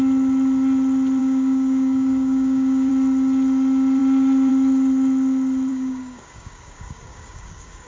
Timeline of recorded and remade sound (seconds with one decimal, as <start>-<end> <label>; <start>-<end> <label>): 0.0-1.2 recorded; 1.2-2.9 remade; 2.9-5.7 recorded; 5.7-7.9 remade